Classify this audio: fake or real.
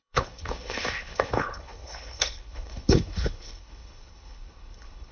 fake